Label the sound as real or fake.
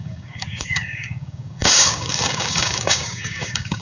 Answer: fake